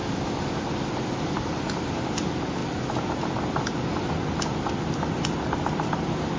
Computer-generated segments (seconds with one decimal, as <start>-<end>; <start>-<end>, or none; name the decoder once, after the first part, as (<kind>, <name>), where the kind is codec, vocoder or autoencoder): none